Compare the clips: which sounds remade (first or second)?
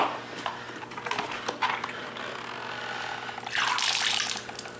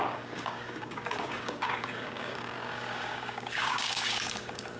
second